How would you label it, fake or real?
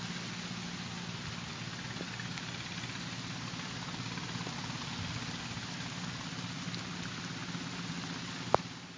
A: real